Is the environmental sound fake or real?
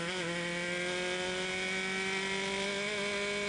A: real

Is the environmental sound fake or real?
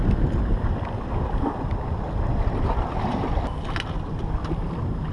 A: real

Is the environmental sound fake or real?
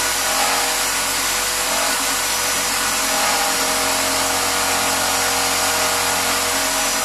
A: real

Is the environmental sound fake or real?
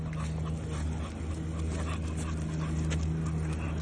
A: real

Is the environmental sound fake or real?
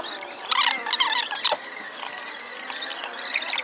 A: real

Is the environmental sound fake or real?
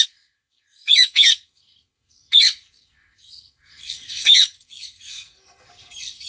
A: fake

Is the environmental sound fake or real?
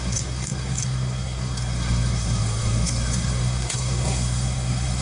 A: fake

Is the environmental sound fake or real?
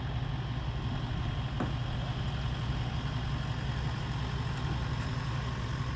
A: real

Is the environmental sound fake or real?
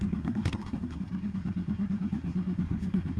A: fake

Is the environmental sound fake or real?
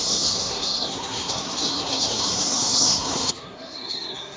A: fake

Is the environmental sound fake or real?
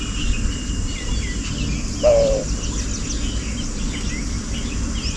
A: real